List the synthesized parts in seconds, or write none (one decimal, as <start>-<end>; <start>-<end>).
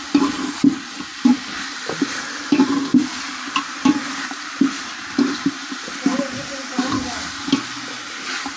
1.1-5.2